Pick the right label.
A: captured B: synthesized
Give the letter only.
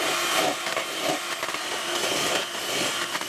A